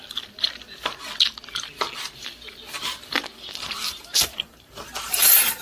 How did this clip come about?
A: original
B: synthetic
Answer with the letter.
A